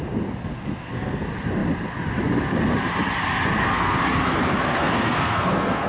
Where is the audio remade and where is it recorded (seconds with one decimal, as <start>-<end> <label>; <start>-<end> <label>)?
0.0-0.4 recorded; 0.4-1.2 remade; 1.2-3.6 recorded; 3.6-4.1 remade; 4.1-4.7 recorded; 4.7-5.9 remade